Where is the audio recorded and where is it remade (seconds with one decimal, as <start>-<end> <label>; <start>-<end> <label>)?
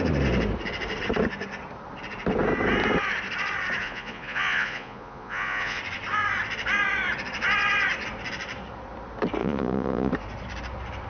0.0-3.8 recorded; 3.8-5.8 remade; 5.8-9.4 recorded; 9.4-10.1 remade; 10.1-11.1 recorded